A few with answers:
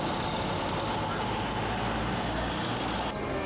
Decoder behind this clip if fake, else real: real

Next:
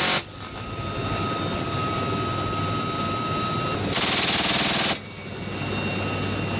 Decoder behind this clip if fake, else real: real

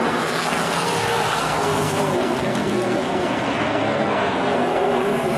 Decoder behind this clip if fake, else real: fake, codec, SNAC